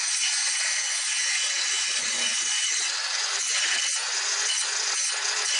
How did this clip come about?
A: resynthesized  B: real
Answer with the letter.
A